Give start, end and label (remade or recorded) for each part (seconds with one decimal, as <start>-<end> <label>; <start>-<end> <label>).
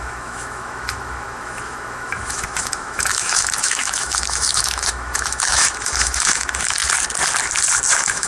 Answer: 0.0-6.8 remade; 6.8-7.9 recorded; 7.9-8.3 remade